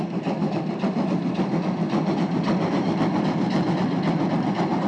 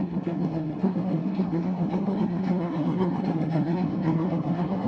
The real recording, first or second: first